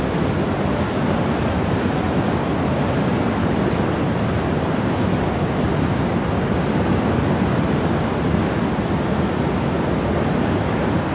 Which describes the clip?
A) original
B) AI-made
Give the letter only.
A